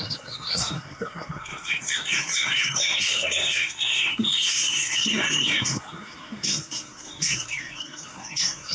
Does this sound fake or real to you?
fake